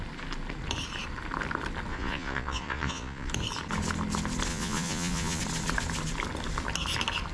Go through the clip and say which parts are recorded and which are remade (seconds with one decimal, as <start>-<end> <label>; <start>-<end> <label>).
0.0-1.9 recorded; 1.9-3.3 remade; 3.3-4.5 recorded; 4.5-5.4 remade; 5.4-7.3 recorded